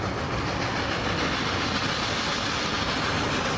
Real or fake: real